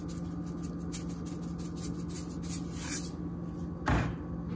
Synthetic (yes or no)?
no